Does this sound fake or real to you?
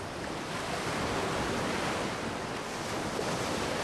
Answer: real